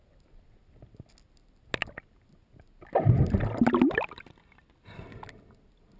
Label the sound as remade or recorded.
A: recorded